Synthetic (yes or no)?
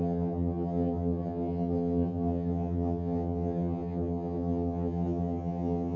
yes